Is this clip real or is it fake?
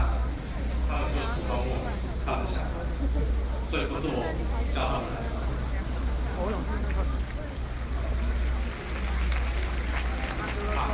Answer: real